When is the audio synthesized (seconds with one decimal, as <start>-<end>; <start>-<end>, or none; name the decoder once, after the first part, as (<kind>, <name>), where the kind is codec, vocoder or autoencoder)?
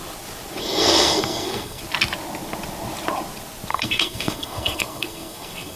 0.6-1.8 (codec, SNAC); 3.7-5.8